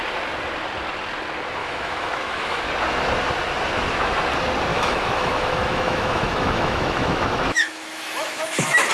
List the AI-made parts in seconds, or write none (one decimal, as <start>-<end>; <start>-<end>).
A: 1.6-2.6; 4.7-8.9